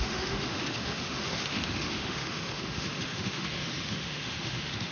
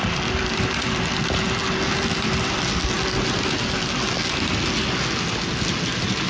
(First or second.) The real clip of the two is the second